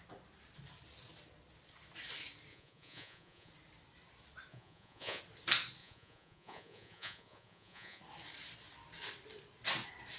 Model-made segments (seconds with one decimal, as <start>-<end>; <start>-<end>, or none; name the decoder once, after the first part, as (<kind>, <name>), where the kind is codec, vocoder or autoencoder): 2.5-3.5 (vocoder, Vocos); 4.5-5.2; 5.8-8.0